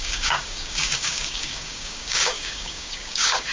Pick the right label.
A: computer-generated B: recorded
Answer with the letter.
A